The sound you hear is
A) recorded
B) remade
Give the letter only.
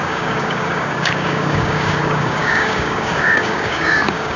B